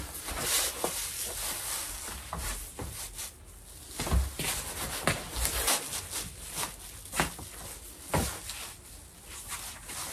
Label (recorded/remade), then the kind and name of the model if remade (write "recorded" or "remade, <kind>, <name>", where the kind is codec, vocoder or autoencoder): recorded